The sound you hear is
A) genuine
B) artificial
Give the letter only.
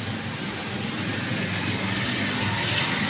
A